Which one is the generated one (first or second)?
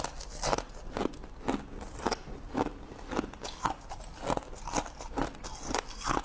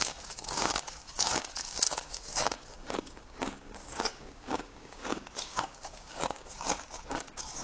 second